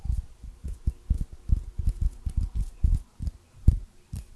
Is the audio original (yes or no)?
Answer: yes